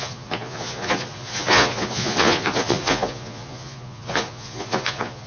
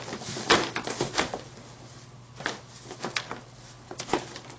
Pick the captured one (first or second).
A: second